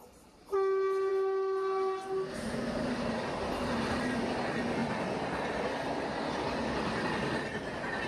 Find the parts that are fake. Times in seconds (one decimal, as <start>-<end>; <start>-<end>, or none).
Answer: none